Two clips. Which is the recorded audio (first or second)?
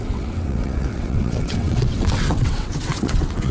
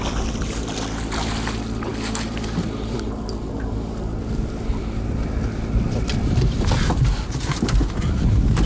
second